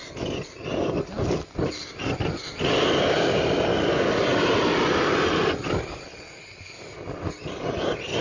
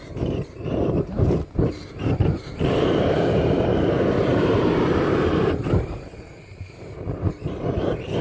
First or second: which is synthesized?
second